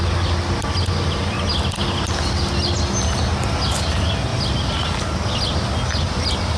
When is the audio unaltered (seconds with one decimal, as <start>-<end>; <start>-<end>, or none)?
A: 0.0-6.6